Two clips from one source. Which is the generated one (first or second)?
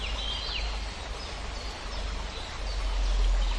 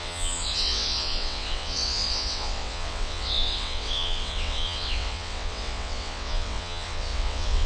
second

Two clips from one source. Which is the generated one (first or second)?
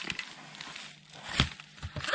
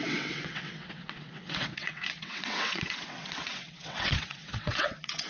second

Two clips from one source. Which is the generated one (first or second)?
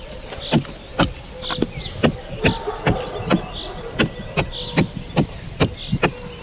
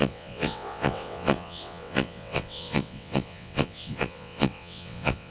second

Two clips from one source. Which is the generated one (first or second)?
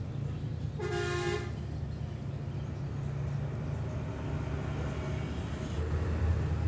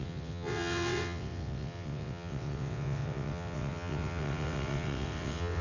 second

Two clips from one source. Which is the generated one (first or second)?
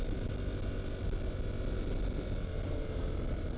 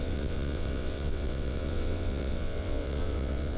second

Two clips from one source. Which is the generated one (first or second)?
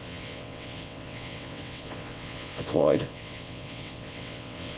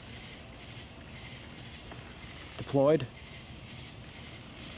first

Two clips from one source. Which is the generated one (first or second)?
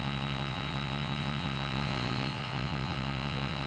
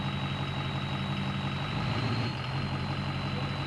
first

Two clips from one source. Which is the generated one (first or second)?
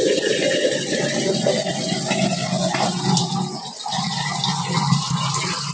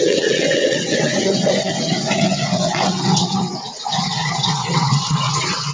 second